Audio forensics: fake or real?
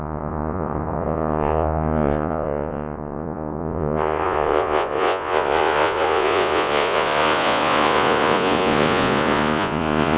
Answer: fake